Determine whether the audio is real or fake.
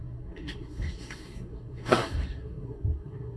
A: fake